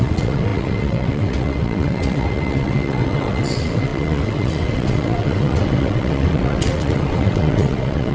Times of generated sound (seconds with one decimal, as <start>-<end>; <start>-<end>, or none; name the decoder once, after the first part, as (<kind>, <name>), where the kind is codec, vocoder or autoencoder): 0.0-8.1 (vocoder, WaveNeXt)